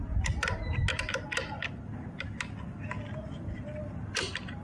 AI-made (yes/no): no